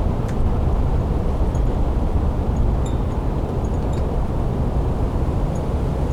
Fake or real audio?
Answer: fake